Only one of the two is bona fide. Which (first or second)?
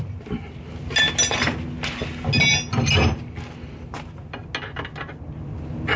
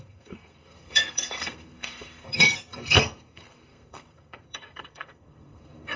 first